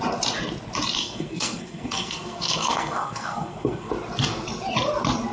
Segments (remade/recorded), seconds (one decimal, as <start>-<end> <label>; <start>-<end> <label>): 0.0-1.0 recorded; 1.0-3.9 remade; 3.9-5.3 recorded